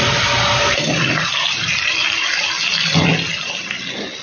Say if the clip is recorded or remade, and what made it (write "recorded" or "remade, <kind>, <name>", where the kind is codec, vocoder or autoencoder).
recorded